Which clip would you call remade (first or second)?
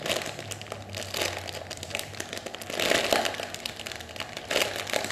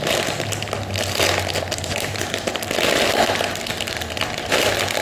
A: second